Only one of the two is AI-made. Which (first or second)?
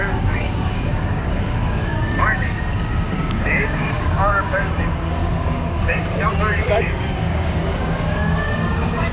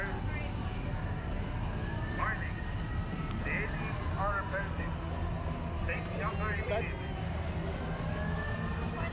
first